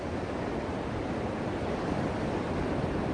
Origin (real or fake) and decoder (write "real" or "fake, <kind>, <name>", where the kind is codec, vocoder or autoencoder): fake, vocoder, BigVGAN v2